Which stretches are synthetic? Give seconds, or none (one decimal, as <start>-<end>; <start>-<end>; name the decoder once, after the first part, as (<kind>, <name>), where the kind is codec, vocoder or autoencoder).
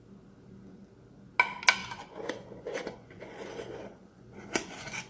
1.8-5.1 (vocoder, Vocos)